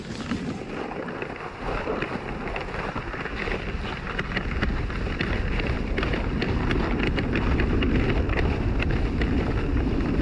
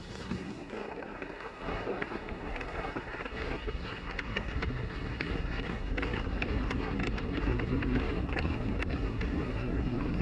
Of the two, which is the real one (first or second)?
first